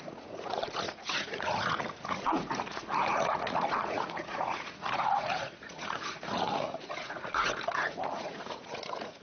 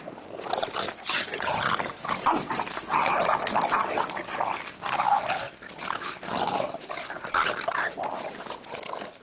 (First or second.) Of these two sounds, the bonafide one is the second